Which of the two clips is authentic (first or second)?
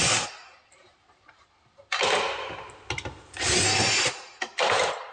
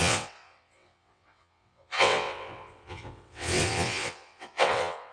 first